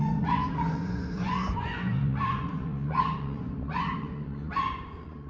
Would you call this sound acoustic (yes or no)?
no